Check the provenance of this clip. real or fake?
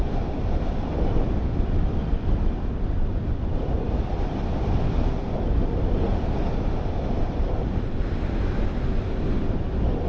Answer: real